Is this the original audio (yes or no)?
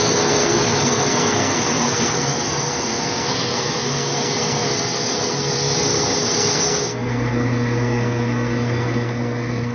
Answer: no